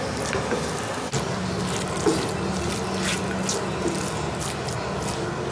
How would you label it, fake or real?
real